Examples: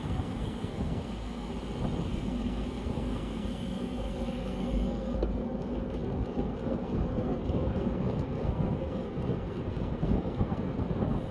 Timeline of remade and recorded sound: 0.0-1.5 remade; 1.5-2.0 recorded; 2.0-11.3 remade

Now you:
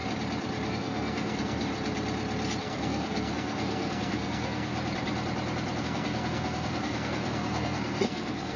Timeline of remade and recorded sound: 0.0-0.7 recorded; 0.7-1.7 remade; 1.7-2.6 recorded; 2.6-4.7 remade; 4.7-5.8 recorded; 5.8-8.6 remade

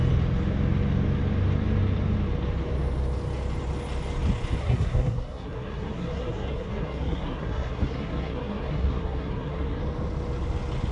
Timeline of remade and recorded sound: 0.0-4.6 recorded; 4.6-9.8 remade; 9.8-10.9 recorded

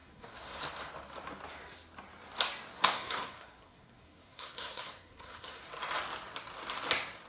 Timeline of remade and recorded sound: 0.0-0.6 remade; 0.6-2.7 recorded; 2.7-5.7 remade; 5.7-7.3 recorded

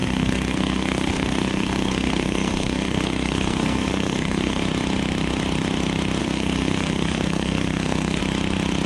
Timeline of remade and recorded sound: 0.0-4.6 remade; 4.6-6.2 recorded; 6.2-8.2 remade; 8.2-8.9 recorded

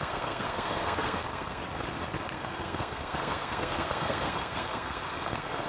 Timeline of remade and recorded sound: 0.0-1.6 remade; 1.6-2.3 recorded; 2.3-5.7 remade

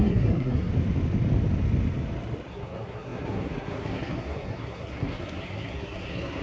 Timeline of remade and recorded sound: 0.0-0.7 remade; 0.7-2.5 recorded; 2.5-6.4 remade

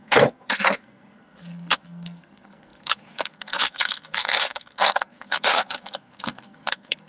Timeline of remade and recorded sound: 0.0-7.1 remade